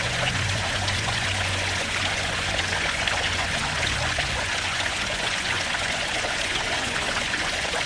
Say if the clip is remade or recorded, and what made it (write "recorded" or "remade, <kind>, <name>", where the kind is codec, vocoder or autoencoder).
remade, vocoder, Vocos